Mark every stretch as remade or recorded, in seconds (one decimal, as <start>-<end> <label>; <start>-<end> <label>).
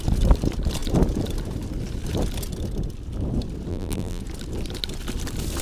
0.0-3.7 recorded; 3.7-4.2 remade; 4.2-5.6 recorded